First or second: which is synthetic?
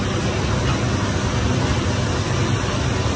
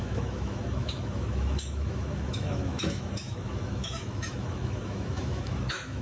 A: second